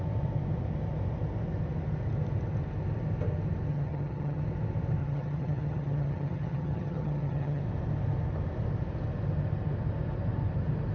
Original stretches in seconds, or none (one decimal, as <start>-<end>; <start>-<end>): 0.0-3.7; 4.4-5.0; 7.6-10.9